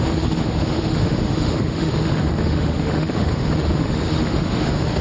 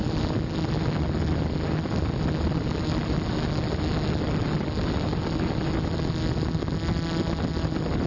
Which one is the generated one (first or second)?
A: first